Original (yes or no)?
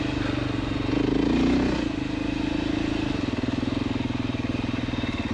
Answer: yes